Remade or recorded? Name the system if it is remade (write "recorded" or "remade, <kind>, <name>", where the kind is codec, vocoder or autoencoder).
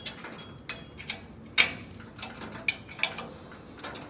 recorded